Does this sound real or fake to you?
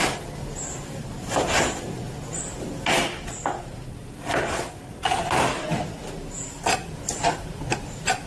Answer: real